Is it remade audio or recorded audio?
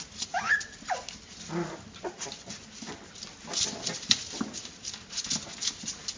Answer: recorded